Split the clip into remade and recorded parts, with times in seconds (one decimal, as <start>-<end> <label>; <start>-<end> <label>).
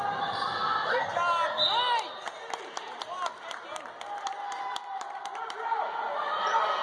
0.0-4.9 recorded; 4.9-5.6 remade; 5.6-6.8 recorded